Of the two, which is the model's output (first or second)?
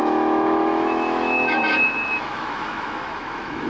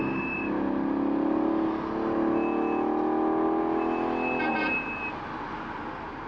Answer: first